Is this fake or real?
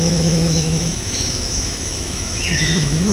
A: fake